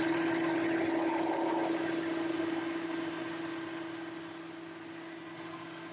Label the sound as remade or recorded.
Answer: recorded